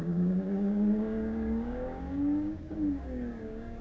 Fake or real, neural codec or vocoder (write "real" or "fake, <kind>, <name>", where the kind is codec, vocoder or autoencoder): fake, codec, DAC